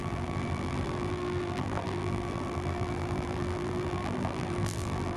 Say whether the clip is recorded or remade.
remade